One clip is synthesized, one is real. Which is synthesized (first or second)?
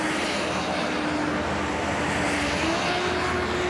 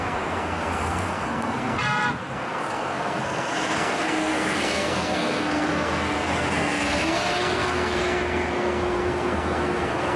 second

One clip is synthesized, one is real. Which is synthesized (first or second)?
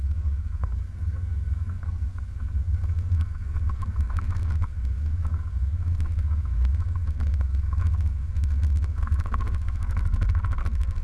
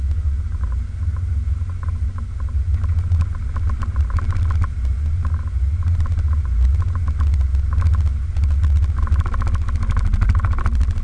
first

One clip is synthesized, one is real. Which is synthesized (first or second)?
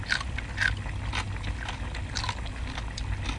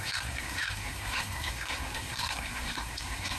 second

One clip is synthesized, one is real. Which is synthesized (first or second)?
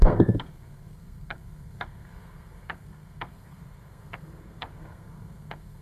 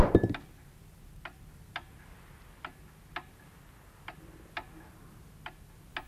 first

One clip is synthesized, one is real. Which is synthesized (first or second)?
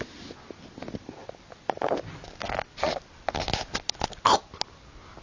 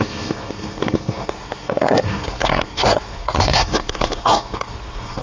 second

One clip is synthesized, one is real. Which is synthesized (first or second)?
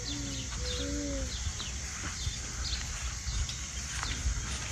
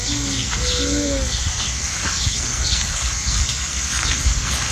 second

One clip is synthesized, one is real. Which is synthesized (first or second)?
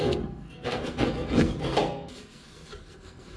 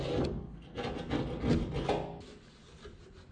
first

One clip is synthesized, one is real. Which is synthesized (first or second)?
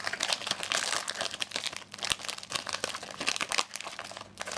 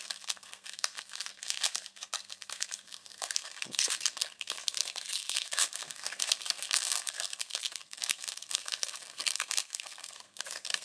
second